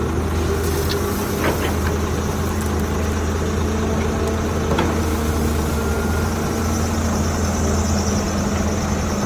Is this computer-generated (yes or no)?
no